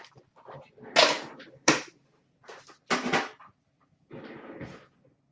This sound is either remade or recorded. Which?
recorded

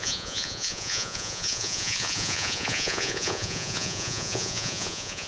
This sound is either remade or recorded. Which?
remade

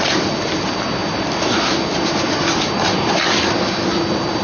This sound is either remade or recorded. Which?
recorded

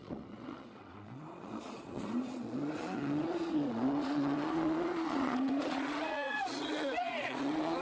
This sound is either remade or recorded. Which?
remade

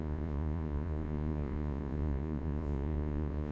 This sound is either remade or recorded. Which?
remade